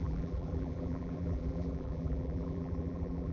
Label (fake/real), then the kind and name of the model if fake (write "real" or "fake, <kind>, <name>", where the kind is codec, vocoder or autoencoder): fake, vocoder, BigVGAN v2